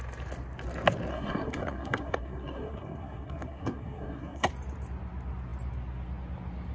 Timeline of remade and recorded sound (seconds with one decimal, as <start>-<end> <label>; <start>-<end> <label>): 0.0-1.1 recorded; 1.1-4.5 remade; 4.5-6.7 recorded